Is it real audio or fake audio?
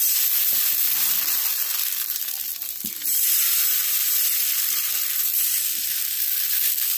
fake